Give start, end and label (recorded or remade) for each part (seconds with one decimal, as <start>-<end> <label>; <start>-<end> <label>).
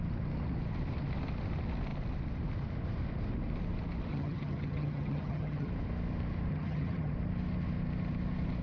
0.0-4.1 recorded; 4.1-5.7 remade; 5.7-6.5 recorded; 6.5-7.1 remade; 7.1-8.6 recorded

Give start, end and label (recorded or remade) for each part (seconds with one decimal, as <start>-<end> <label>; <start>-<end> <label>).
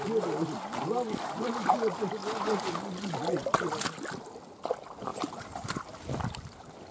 0.0-5.1 recorded; 5.1-5.8 remade; 5.8-6.9 recorded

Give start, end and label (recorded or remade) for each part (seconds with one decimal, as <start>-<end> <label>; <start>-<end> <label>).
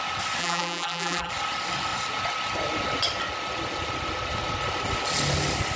0.0-0.4 recorded; 0.4-1.3 remade; 1.3-5.8 recorded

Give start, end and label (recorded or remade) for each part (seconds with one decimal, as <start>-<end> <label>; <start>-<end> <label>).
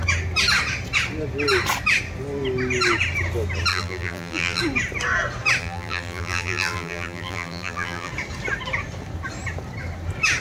0.0-3.7 recorded; 3.7-4.6 remade; 4.6-5.6 recorded; 5.6-8.1 remade; 8.1-10.4 recorded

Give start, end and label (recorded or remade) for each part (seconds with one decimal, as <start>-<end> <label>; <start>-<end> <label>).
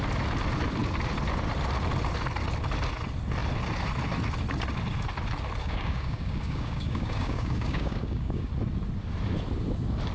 0.0-5.6 recorded; 5.6-8.5 remade; 8.5-10.1 recorded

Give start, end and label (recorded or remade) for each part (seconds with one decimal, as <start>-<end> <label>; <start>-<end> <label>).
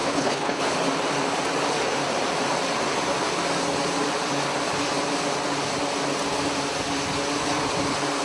0.0-0.6 remade; 0.6-8.2 recorded